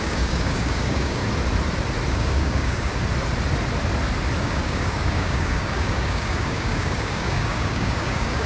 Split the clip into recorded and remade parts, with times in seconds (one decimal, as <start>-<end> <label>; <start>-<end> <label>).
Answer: 0.0-1.2 remade; 1.2-2.1 recorded; 2.1-2.9 remade; 2.9-4.4 recorded; 4.4-8.5 remade